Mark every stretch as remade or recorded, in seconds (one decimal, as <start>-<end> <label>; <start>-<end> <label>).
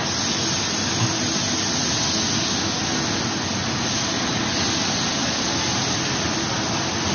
0.0-7.1 recorded